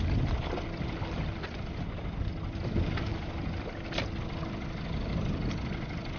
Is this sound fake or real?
real